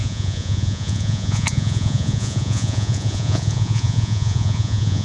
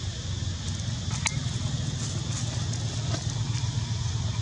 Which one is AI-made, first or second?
first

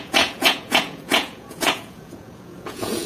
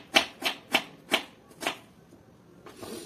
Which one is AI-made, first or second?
first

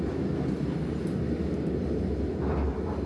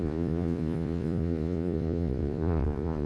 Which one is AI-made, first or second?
second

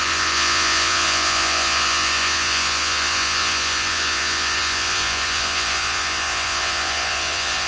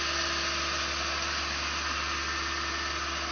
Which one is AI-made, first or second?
first